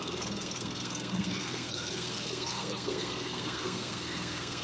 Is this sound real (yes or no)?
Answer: no